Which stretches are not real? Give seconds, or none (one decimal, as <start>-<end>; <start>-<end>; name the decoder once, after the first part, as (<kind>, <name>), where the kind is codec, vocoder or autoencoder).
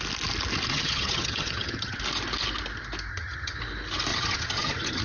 0.7-2.0 (vocoder, HiFi-GAN); 3.1-3.6; 4.1-5.0